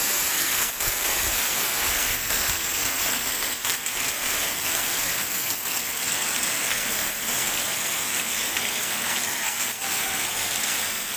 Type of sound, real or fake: fake